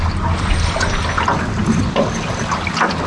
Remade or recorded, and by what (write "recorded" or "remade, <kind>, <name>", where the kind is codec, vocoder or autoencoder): recorded